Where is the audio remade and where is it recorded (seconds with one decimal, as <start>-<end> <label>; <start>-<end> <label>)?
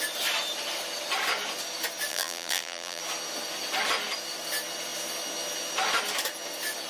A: 0.0-2.1 recorded; 2.1-3.0 remade; 3.0-6.9 recorded